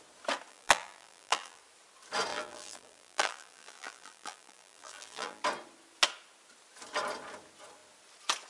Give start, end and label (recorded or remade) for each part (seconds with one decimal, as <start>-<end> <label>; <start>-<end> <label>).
0.0-0.5 recorded; 0.5-1.6 remade; 1.6-2.3 recorded; 2.3-5.4 remade; 5.4-8.5 recorded